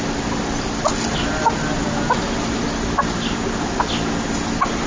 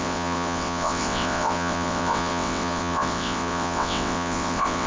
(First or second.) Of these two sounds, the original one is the first